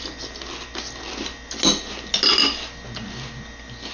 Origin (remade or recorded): recorded